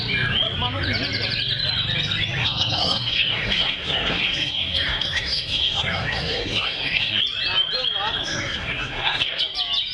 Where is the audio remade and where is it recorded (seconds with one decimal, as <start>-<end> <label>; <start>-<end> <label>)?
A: 0.0-2.4 recorded; 2.4-7.2 remade; 7.2-8.2 recorded; 8.2-9.4 remade; 9.4-9.9 recorded